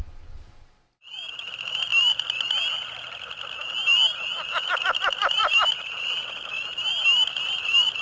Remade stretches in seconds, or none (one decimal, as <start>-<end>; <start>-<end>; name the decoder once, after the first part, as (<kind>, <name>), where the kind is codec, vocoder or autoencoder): none

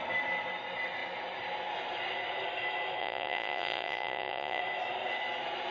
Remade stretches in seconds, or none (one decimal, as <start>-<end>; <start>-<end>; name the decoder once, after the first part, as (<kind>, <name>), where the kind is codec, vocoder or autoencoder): 3.0-4.6 (vocoder, Vocos)

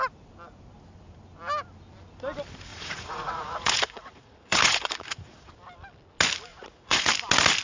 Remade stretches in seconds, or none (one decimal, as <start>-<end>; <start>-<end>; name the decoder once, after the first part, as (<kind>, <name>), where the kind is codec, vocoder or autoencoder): 2.7-5.5 (vocoder, Vocos); 6.5-7.1

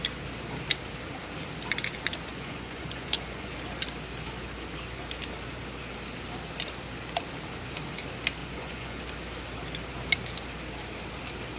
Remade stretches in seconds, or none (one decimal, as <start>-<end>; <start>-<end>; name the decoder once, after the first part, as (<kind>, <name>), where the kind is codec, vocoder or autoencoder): 2.3-3.5 (vocoder, Vocos); 8.4-9.0